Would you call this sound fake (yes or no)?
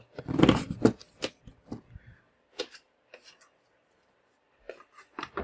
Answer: yes